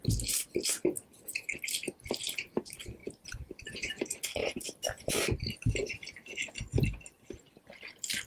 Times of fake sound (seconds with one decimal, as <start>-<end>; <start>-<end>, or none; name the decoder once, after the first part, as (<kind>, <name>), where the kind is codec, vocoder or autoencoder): 3.0-3.9 (vocoder, BigVGAN v2); 4.4-5.1